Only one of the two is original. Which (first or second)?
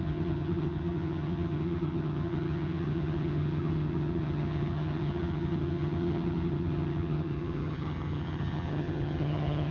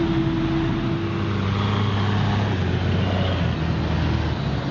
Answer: second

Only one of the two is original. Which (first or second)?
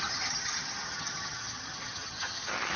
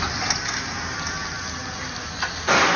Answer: second